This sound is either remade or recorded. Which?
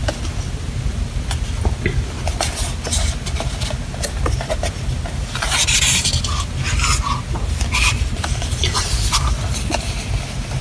recorded